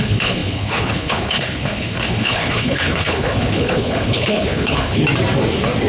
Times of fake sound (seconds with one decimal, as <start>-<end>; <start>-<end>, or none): 0.0-5.0